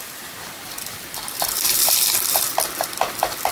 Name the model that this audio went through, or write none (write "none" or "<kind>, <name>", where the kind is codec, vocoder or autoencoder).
vocoder, BigVGAN v2